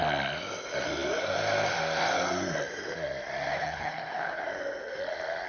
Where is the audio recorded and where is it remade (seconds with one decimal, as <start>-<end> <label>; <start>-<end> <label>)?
0.0-3.5 recorded; 3.5-4.4 remade; 4.4-5.5 recorded